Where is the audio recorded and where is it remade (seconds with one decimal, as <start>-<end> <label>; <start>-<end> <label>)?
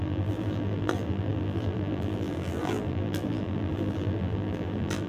0.0-5.1 remade